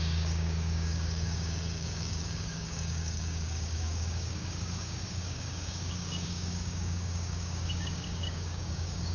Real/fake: fake